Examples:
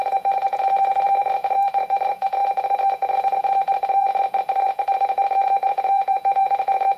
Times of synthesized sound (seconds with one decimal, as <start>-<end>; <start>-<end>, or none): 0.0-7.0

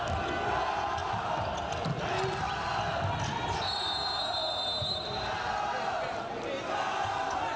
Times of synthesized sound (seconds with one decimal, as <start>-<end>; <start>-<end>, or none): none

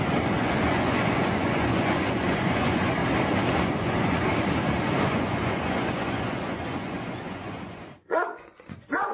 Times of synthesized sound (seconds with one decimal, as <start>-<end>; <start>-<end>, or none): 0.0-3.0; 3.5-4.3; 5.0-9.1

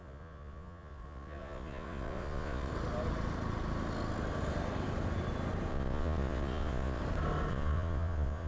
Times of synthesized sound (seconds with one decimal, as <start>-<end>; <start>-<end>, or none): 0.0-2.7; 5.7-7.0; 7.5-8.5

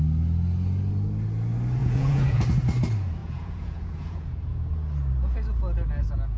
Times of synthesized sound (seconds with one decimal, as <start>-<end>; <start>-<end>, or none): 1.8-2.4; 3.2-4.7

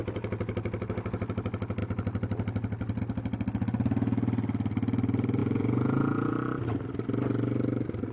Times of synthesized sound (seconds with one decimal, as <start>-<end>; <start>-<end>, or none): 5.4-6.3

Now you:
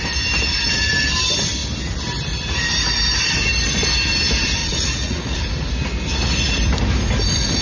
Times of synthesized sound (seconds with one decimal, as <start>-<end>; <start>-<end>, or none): 4.6-5.4

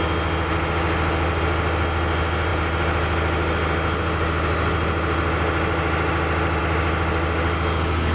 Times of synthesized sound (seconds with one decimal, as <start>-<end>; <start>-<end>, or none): none